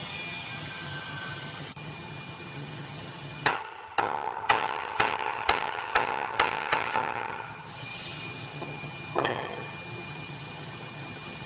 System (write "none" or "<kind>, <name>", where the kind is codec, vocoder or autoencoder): vocoder, HiFi-GAN